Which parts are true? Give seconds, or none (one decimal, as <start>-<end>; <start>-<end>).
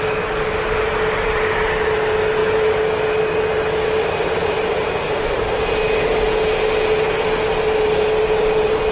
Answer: 0.0-8.9